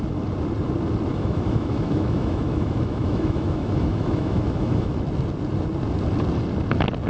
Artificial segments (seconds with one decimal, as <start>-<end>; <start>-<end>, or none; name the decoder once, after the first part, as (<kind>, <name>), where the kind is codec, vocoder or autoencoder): 1.1-5.0 (autoencoder, DAC-VAE)